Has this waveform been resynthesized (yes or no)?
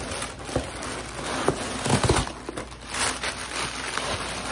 no